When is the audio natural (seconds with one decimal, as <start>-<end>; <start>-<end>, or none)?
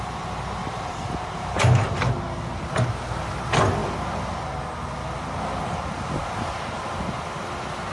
0.0-0.6; 2.1-7.9